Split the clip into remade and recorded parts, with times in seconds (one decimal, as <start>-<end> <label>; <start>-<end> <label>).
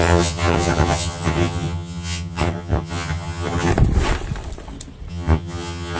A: 0.0-3.7 remade; 3.7-5.1 recorded; 5.1-6.0 remade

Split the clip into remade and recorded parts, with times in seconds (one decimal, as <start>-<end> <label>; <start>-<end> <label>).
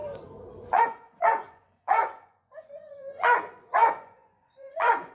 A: 0.0-0.7 recorded; 0.7-5.1 remade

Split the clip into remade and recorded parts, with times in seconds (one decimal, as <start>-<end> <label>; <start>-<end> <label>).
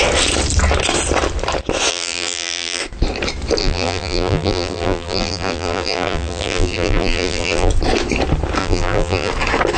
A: 0.0-1.9 recorded; 1.9-2.8 remade; 2.8-3.6 recorded; 3.6-7.7 remade; 7.7-8.6 recorded; 8.6-9.3 remade; 9.3-9.8 recorded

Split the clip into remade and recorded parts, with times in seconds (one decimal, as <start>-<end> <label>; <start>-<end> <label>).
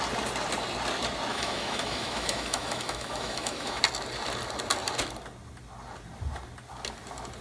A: 0.0-1.3 recorded; 1.3-3.8 remade; 3.8-7.4 recorded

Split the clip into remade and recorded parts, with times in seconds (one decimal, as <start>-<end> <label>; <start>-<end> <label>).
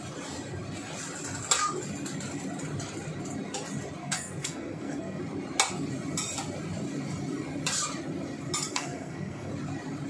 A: 0.0-4.0 recorded; 4.0-5.2 remade; 5.2-8.7 recorded; 8.7-9.5 remade; 9.5-10.1 recorded